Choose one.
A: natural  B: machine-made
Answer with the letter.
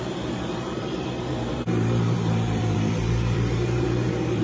B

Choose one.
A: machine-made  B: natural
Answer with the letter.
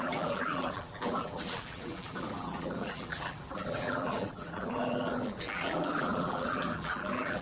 A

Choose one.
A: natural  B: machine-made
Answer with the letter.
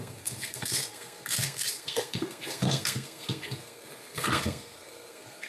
B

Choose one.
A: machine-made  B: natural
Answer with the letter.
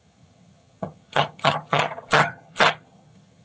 A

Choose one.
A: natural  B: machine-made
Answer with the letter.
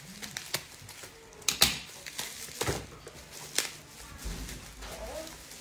A